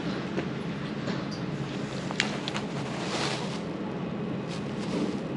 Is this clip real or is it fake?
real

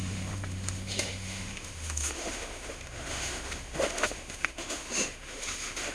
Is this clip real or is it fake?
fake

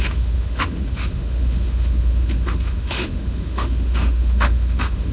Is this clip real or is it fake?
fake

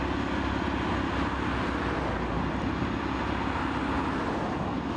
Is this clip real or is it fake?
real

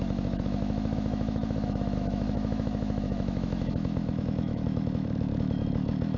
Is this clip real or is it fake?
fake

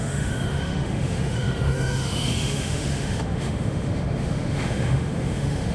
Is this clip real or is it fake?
fake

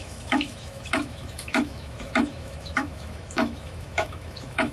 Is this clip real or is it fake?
fake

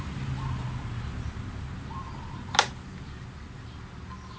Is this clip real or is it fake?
real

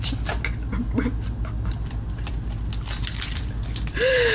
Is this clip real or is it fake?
real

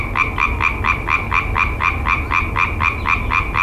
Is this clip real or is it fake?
real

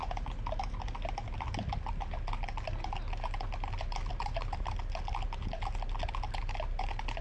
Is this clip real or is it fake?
real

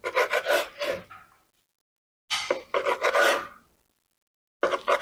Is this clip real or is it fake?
real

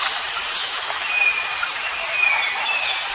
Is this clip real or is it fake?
real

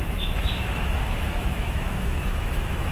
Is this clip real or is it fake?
fake